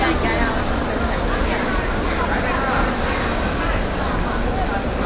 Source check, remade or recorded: recorded